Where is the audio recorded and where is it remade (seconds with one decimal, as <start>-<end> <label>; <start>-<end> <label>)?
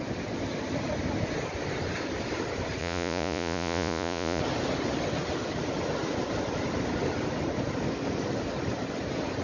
0.0-2.8 recorded; 2.8-4.4 remade; 4.4-9.4 recorded